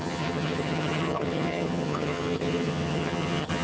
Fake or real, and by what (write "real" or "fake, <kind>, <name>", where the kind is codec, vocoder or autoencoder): fake, vocoder, HiFi-GAN